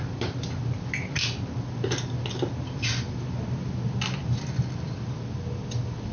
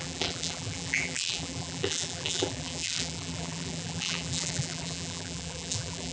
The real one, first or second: first